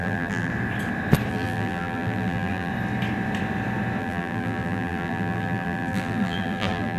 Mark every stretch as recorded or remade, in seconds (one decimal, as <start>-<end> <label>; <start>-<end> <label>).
0.0-0.5 remade; 0.5-1.3 recorded; 1.3-2.7 remade; 2.7-4.0 recorded; 4.0-7.0 remade